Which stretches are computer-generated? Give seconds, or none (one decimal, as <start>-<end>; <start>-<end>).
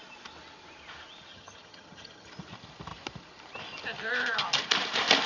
1.3-2.3